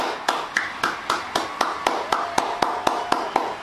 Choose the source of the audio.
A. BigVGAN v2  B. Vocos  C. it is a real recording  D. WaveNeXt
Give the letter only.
C